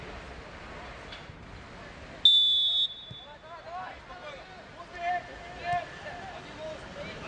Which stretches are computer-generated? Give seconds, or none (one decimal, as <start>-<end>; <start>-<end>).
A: none